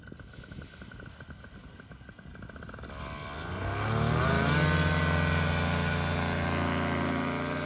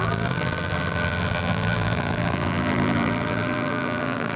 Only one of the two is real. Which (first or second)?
first